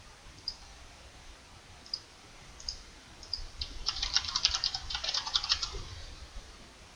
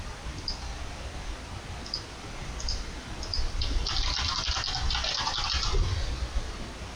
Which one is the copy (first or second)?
first